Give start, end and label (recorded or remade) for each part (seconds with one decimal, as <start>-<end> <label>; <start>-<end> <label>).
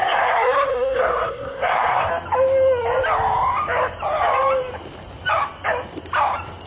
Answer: 0.0-2.1 remade; 2.1-6.7 recorded